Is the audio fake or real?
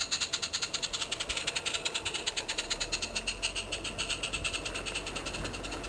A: real